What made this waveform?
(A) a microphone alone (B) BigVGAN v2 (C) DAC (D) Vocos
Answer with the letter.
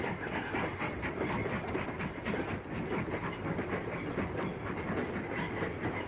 A